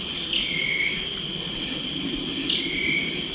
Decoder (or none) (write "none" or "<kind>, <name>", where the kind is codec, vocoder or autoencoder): none